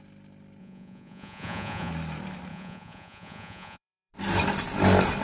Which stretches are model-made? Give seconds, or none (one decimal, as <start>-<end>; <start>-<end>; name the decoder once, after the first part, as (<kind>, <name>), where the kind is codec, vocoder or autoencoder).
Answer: 0.6-1.9 (vocoder, Vocos); 2.5-4.1